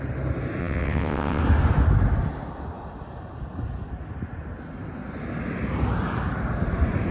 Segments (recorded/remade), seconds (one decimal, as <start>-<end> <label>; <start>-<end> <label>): 0.0-0.6 recorded; 0.6-1.4 remade; 1.4-7.1 recorded